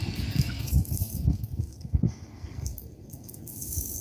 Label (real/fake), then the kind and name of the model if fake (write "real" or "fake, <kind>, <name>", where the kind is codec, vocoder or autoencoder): fake, codec, SNAC